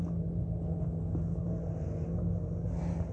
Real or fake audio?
real